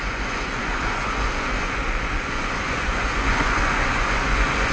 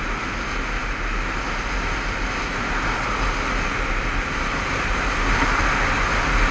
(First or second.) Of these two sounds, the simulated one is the first